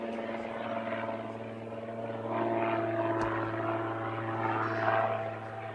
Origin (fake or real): real